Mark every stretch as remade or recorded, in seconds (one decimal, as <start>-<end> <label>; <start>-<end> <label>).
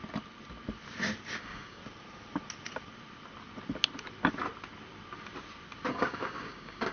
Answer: 0.0-1.4 recorded; 1.4-1.8 remade; 1.8-5.9 recorded; 5.9-6.9 remade